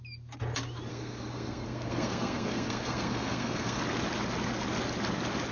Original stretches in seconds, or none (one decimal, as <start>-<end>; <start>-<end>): 0.0-0.9; 3.8-5.5